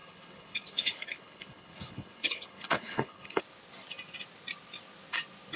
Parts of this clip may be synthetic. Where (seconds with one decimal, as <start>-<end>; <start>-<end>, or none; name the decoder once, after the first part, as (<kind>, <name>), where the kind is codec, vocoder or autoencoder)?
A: 0.0-3.4 (codec, HILCodec)